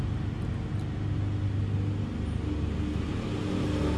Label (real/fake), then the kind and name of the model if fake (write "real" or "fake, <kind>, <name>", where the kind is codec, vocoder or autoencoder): real